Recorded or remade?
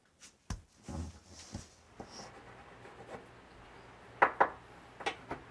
recorded